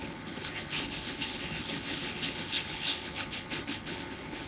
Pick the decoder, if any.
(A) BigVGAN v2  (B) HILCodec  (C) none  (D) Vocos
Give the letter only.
B